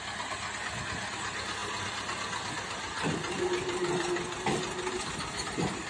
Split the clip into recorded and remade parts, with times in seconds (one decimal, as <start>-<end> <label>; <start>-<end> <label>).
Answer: 0.0-5.9 recorded